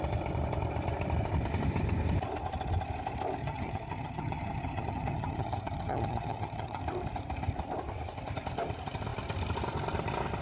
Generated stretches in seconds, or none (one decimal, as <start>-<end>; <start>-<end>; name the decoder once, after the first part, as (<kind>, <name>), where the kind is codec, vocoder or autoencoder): 3.4-6.8 (vocoder, HiFi-GAN)